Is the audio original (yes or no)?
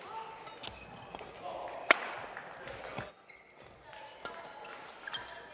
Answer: yes